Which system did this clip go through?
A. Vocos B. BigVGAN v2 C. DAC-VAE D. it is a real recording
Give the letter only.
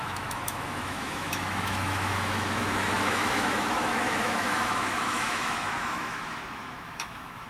C